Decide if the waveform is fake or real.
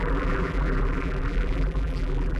fake